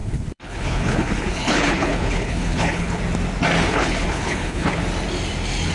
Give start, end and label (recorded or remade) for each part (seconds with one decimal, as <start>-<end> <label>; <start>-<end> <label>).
0.0-3.0 remade; 3.0-3.7 recorded; 3.7-4.8 remade; 4.8-5.7 recorded